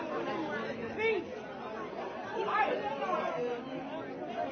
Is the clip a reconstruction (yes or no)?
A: no